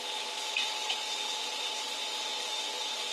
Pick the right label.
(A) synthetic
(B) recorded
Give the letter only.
B